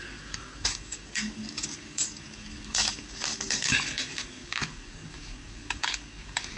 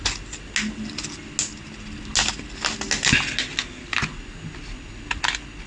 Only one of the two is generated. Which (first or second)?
first